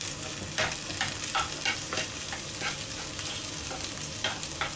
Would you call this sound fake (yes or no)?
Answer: no